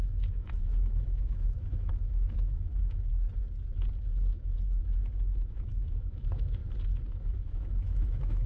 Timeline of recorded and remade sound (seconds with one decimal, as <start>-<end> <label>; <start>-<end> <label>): 0.0-3.1 remade; 3.1-4.0 recorded; 4.0-4.5 remade; 4.5-5.1 recorded; 5.1-6.6 remade; 6.6-7.1 recorded; 7.1-8.5 remade